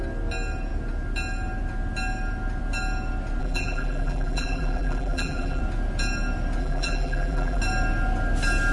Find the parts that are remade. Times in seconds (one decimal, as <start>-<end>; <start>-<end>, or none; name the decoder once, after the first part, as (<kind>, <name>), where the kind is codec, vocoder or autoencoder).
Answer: 3.4-5.6 (vocoder, BigVGAN v2); 6.6-7.6